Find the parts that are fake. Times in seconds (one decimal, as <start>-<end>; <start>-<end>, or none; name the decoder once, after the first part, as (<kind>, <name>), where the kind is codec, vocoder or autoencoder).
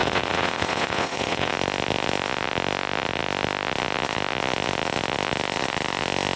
0.0-1.5 (vocoder, Vocos)